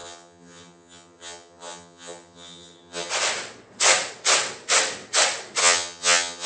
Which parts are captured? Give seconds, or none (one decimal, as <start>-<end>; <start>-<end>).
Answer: 3.1-5.6